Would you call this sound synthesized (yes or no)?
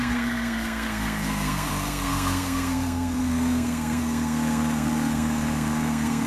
yes